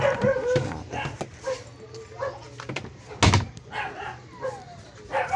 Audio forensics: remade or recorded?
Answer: recorded